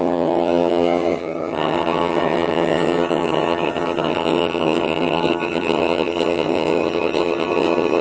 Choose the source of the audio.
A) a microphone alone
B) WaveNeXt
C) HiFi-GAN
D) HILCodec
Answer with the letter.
C